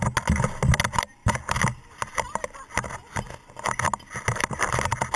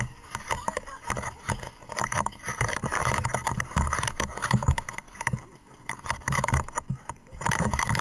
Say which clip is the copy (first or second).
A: second